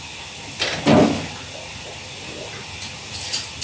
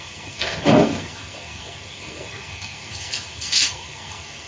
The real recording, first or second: first